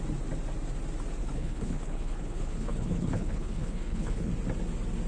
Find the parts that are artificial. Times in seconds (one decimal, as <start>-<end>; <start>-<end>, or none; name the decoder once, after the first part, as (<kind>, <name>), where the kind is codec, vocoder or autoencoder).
1.2-4.3 (codec, HILCodec)